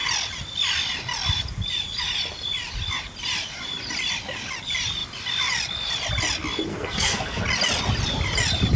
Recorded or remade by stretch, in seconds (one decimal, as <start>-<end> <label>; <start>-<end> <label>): 0.0-6.7 recorded; 6.7-7.4 remade; 7.4-8.8 recorded

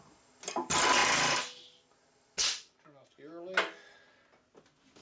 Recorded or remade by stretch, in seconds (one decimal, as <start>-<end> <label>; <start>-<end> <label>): 0.0-5.0 recorded